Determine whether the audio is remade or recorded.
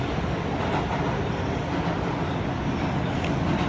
recorded